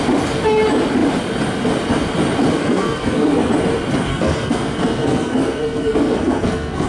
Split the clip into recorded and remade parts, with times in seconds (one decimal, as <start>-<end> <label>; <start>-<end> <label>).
0.0-2.6 recorded; 2.6-3.5 remade; 3.5-4.1 recorded; 4.1-6.9 remade